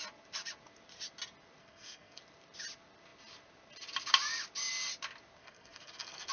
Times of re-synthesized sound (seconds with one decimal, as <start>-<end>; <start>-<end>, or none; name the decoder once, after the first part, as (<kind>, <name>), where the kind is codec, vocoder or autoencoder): 1.6-2.2 (codec, SNAC); 5.4-6.3